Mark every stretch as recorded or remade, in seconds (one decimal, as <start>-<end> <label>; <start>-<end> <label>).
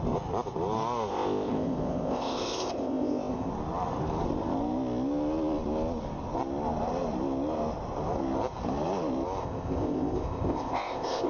0.0-1.1 recorded; 1.1-3.5 remade; 3.5-9.4 recorded; 9.4-11.3 remade